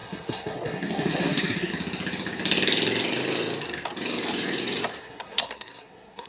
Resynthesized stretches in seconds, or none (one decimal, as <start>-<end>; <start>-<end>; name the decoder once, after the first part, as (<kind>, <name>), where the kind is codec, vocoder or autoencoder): 0.0-1.7 (codec, SNAC); 5.0-6.3

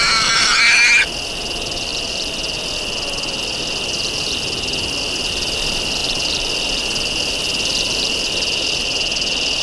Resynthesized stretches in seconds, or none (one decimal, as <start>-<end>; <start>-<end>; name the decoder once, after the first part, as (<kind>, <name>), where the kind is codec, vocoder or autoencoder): none

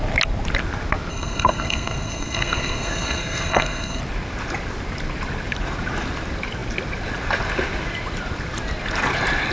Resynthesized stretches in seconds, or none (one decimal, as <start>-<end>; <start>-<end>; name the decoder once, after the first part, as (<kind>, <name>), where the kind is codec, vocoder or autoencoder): 1.1-4.0 (codec, SNAC)

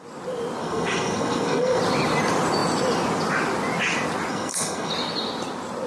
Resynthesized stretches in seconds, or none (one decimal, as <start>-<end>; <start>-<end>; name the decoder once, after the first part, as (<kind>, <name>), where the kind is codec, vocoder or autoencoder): 0.6-1.8 (codec, SNAC); 4.3-4.9

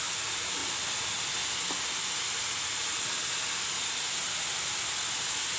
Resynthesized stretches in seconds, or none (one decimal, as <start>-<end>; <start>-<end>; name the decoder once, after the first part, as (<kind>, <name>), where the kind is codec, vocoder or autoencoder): none

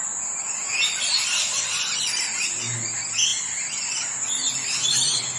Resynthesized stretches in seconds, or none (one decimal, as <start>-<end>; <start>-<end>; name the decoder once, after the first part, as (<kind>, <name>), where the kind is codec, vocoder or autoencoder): none